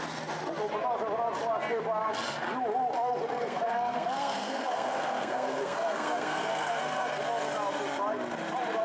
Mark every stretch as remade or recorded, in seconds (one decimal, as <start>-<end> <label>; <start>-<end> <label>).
0.0-3.4 recorded; 3.4-7.2 remade; 7.2-8.8 recorded